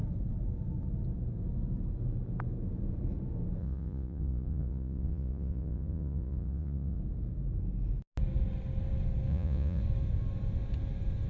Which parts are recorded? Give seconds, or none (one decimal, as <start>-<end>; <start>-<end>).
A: 0.0-3.6; 7.0-9.3; 9.8-11.3